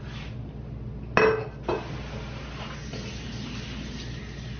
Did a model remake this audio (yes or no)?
no